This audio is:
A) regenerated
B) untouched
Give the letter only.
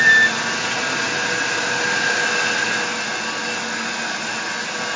B